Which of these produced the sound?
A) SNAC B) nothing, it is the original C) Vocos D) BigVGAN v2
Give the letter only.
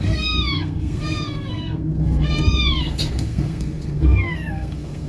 A